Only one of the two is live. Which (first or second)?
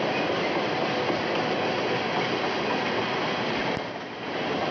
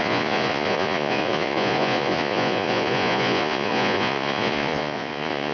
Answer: first